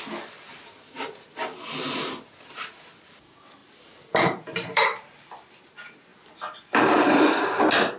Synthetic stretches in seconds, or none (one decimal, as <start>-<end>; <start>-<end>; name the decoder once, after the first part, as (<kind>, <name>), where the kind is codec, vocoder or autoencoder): 3.6-5.3 (vocoder, BigVGAN v2)